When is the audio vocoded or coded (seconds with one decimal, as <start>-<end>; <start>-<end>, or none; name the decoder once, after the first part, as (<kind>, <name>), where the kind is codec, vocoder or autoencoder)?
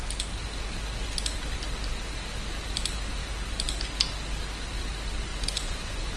5.3-6.2 (vocoder, Vocos)